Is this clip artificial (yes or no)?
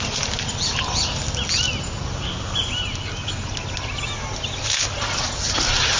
no